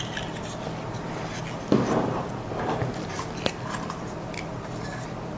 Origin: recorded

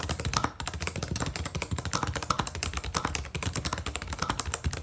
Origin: recorded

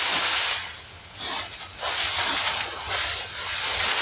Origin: recorded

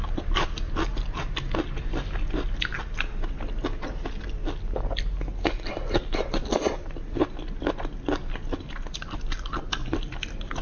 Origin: recorded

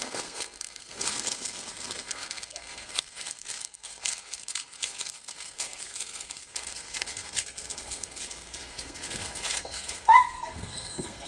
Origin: remade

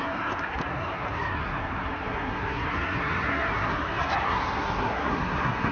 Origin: remade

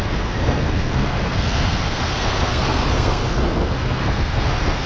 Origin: remade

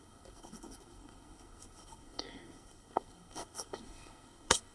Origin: remade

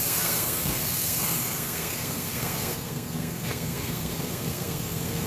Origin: remade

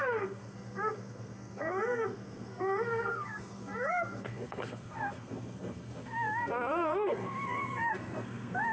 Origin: remade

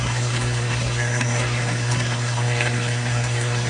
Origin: remade